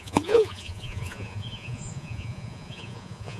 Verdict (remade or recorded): remade